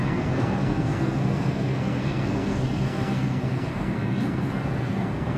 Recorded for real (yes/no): no